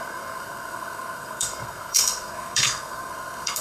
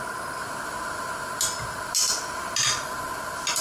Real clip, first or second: second